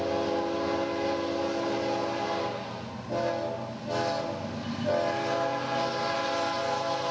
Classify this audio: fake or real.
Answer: real